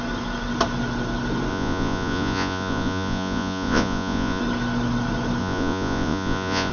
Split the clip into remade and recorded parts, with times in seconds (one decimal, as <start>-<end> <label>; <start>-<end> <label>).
0.0-1.5 recorded; 1.5-4.4 remade; 4.4-5.4 recorded; 5.4-6.7 remade

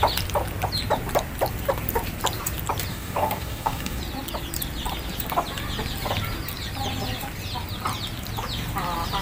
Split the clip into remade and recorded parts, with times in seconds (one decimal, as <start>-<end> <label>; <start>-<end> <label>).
0.0-2.9 recorded; 2.9-4.0 remade; 4.0-9.2 recorded

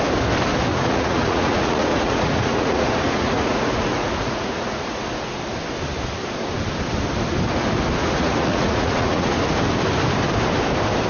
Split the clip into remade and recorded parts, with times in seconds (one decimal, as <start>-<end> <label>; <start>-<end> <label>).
0.0-0.7 recorded; 0.7-5.0 remade; 5.0-8.0 recorded; 8.0-9.3 remade; 9.3-11.1 recorded

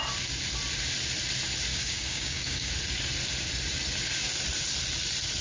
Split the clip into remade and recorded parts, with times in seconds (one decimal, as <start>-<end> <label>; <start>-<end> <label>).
0.0-1.7 recorded; 1.7-2.7 remade; 2.7-5.4 recorded

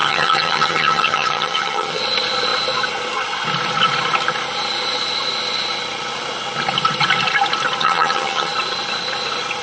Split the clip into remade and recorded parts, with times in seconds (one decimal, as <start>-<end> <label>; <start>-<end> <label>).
0.0-2.0 remade; 2.0-7.8 recorded; 7.8-8.5 remade; 8.5-9.6 recorded

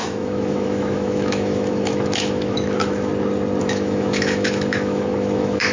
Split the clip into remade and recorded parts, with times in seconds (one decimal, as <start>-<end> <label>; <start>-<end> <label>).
0.0-3.1 remade; 3.1-3.6 recorded; 3.6-5.7 remade

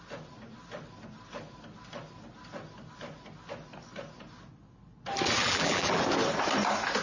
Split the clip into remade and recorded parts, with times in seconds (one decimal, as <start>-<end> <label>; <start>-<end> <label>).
0.0-5.4 recorded; 5.4-6.0 remade; 6.0-7.0 recorded

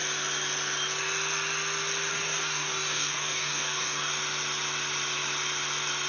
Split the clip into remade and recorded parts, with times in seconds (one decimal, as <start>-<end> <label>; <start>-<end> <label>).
0.0-2.1 recorded; 2.1-4.1 remade; 4.1-6.1 recorded